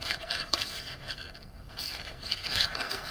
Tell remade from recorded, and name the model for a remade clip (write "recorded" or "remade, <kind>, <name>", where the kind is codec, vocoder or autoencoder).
remade, codec, SNAC